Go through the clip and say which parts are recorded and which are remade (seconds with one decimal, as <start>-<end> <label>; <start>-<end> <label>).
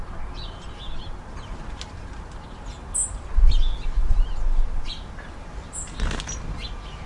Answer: 0.0-7.1 recorded